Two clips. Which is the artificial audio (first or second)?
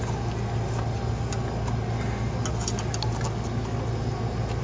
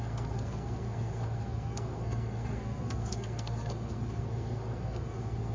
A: second